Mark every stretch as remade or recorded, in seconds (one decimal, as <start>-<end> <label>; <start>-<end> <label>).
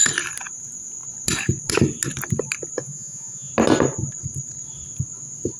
0.0-2.8 recorded; 2.8-3.5 remade; 3.5-5.6 recorded